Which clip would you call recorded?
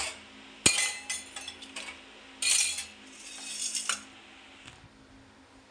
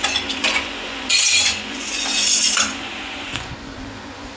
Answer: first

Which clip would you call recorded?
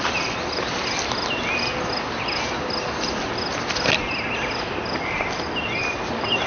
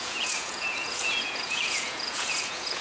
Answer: first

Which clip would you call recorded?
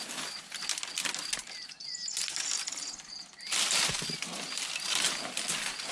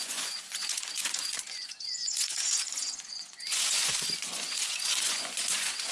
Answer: first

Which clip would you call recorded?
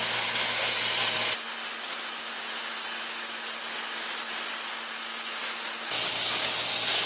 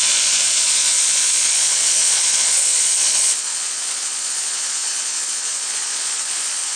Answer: first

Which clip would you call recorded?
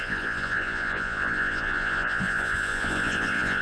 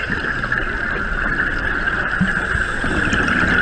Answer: second